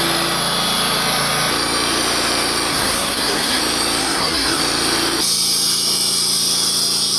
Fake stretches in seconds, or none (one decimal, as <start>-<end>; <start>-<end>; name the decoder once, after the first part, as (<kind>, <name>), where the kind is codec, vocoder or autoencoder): 2.7-3.6 (codec, SNAC); 4.0-4.6